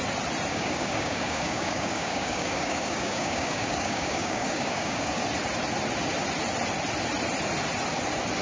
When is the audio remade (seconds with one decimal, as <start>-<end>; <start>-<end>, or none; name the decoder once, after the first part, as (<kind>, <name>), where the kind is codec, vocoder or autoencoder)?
0.5-5.2 (codec, DAC)

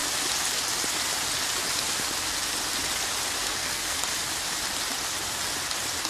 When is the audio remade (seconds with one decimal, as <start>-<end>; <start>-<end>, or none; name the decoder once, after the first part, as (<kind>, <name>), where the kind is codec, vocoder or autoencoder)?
3.4-4.0 (codec, SNAC)

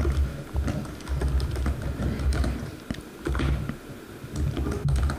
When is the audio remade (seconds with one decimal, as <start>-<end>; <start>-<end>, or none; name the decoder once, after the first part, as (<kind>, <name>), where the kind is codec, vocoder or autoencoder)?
2.3-3.5 (vocoder, BigVGAN v2)

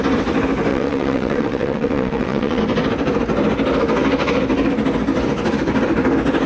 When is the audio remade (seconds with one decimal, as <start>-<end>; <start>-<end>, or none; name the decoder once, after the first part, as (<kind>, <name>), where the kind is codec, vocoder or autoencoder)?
0.7-2.6 (vocoder, WaveNeXt)

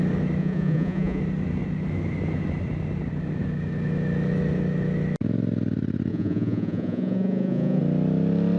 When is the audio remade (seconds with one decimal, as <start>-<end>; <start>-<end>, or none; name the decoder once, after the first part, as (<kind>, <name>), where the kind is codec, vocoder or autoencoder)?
0.4-1.2 (vocoder, Vocos); 6.1-7.8